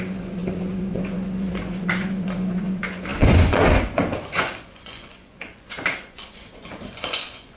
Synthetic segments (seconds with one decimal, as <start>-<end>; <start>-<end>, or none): 0.0-7.6